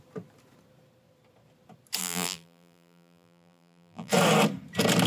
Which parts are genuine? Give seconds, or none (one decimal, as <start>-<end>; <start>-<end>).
0.0-2.0; 4.1-5.1